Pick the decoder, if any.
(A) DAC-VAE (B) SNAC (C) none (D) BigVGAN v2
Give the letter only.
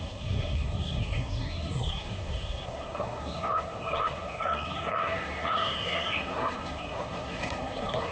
B